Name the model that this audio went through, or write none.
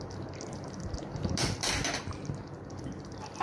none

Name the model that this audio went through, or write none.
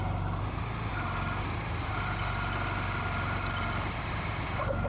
none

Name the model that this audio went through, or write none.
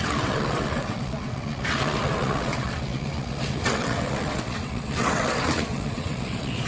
vocoder, WaveNeXt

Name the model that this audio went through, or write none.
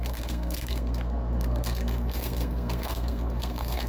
codec, SNAC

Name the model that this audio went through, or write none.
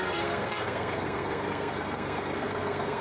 codec, SNAC